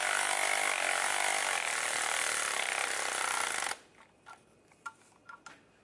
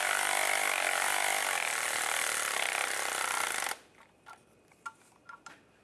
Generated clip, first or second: second